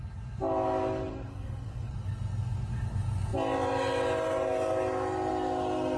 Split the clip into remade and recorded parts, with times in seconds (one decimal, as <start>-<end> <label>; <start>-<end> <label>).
0.0-1.1 recorded; 1.1-1.9 remade; 1.9-6.0 recorded